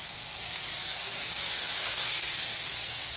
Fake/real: fake